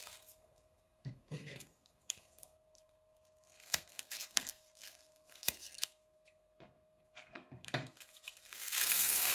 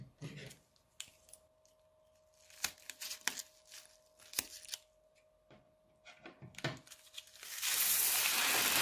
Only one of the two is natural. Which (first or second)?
second